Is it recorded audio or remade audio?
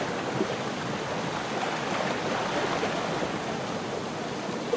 recorded